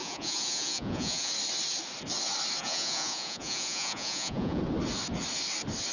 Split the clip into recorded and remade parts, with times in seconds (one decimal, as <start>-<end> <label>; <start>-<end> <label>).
0.0-1.3 remade; 1.3-2.6 recorded; 2.6-4.6 remade; 4.6-5.9 recorded